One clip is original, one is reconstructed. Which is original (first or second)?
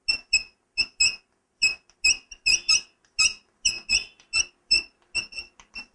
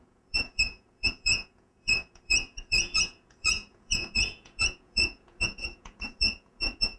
first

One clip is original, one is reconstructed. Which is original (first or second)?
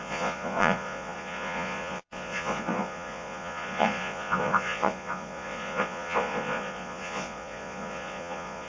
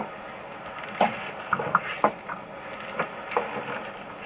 second